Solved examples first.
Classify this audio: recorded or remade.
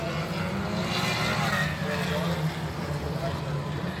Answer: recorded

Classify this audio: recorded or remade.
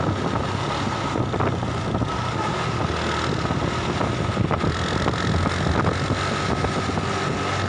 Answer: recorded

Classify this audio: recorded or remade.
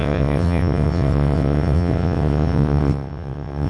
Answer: remade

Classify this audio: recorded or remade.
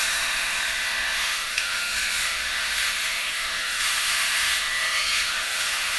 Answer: remade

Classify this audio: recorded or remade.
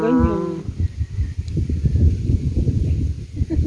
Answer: recorded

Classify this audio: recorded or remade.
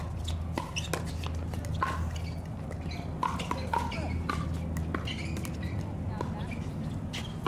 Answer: recorded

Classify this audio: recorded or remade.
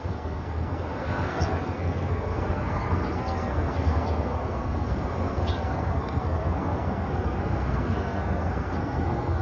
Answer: remade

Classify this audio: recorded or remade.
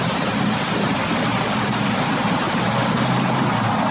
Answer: recorded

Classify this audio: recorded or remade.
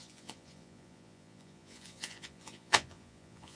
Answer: remade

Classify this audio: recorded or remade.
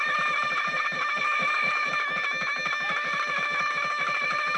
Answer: remade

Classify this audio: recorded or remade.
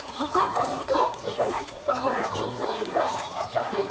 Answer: remade